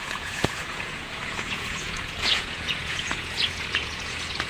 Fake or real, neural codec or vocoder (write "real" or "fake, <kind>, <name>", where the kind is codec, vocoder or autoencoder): fake, vocoder, Vocos